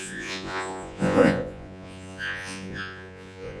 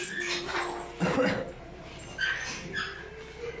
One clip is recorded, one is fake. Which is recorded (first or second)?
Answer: second